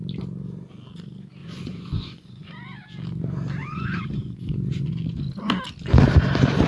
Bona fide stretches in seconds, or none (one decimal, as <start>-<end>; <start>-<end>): 0.0-1.4; 2.5-3.6; 4.9-6.7